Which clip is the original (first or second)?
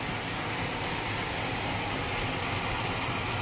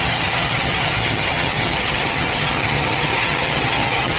first